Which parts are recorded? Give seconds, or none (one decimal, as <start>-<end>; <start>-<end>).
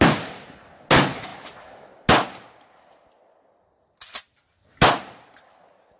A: 0.0-6.0